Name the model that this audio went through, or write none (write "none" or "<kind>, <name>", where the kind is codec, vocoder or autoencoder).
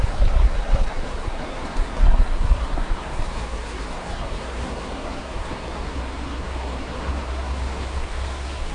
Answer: codec, SNAC